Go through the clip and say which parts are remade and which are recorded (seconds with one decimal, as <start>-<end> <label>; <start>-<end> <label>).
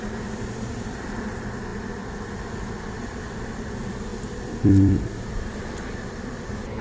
0.0-6.8 remade